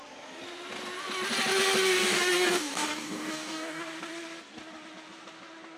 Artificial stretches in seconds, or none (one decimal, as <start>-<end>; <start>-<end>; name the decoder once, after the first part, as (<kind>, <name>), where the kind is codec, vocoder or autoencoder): 2.0-3.8 (codec, DAC)